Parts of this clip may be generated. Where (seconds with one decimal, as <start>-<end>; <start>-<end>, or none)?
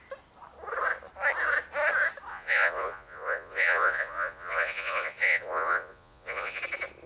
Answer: 2.3-6.6